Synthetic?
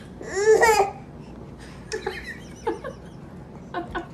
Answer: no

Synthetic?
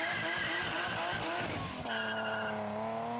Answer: no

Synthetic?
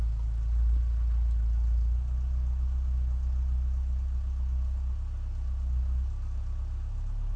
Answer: no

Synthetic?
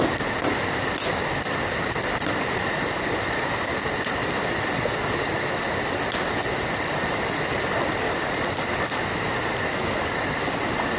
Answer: no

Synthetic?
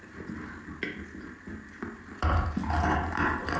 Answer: no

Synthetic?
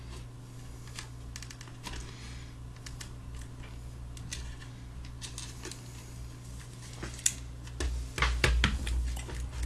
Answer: no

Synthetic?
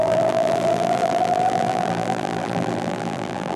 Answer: yes